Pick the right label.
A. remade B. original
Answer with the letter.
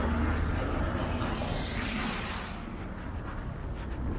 B